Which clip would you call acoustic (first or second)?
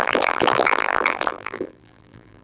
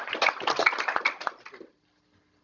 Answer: second